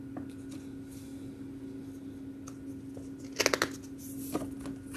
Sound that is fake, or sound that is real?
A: real